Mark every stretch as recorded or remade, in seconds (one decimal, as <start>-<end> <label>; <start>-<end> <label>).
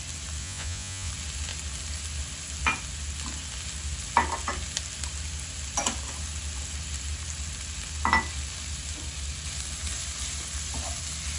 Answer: 0.0-0.4 recorded; 0.4-1.1 remade; 1.1-11.4 recorded